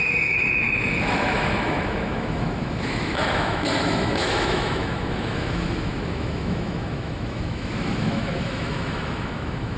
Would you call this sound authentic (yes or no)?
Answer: no